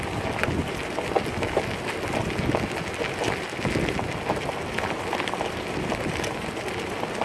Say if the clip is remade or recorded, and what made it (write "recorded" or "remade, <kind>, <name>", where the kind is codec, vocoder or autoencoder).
recorded